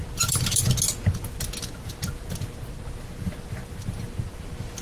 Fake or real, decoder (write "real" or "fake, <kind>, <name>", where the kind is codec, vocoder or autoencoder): real